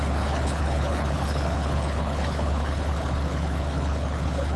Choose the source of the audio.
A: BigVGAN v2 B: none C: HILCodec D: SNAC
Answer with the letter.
C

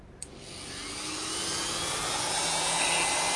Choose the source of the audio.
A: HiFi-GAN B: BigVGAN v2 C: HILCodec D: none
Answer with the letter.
D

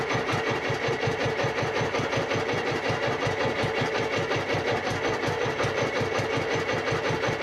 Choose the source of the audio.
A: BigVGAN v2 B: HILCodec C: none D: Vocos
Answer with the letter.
C